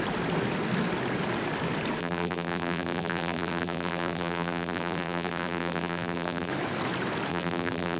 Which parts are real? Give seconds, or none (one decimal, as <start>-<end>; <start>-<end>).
0.0-2.0; 6.5-7.3